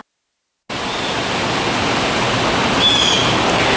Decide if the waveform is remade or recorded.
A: recorded